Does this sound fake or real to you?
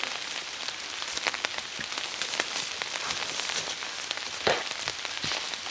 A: real